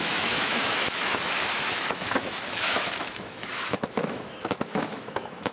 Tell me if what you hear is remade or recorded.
remade